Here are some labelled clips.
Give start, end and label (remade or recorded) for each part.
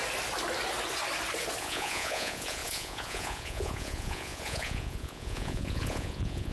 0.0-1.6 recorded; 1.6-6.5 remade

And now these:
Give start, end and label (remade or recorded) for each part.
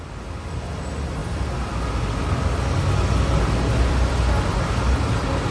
0.0-5.5 recorded